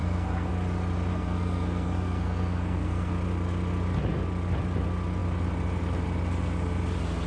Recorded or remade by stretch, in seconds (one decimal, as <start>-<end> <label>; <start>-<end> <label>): 0.0-0.5 remade; 0.5-1.1 recorded; 1.1-3.1 remade; 3.1-7.3 recorded